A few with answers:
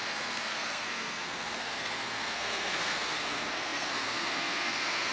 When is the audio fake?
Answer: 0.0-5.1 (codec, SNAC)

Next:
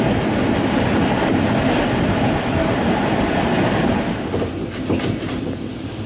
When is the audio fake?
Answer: none